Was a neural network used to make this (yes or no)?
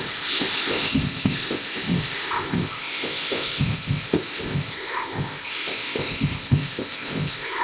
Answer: yes